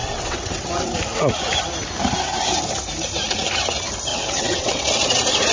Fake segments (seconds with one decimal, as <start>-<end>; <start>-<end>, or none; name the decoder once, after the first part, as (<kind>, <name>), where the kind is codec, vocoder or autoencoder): 0.0-0.9 (vocoder, WaveNeXt); 4.1-4.8